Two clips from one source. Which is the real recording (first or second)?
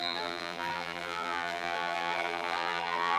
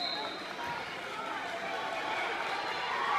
second